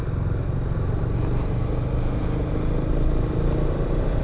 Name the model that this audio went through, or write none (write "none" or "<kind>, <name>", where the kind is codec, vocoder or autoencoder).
none